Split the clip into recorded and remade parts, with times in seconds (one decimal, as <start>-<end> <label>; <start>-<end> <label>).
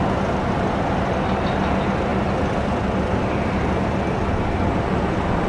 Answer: 0.0-5.5 recorded